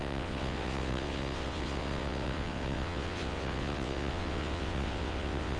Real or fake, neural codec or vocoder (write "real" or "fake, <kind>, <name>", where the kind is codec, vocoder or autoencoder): fake, vocoder, WaveNeXt